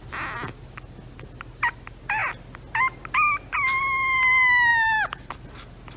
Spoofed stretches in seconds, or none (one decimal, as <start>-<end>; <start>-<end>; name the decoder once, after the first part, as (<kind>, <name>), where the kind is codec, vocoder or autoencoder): none